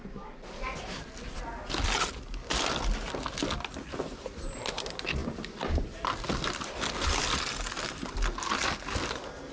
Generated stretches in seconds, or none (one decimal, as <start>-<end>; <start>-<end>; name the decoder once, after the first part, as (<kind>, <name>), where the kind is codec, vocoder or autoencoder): none